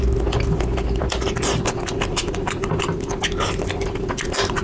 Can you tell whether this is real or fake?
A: real